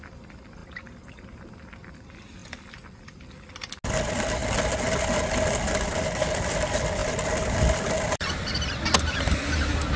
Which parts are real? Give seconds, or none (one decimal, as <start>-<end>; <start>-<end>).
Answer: 0.0-10.0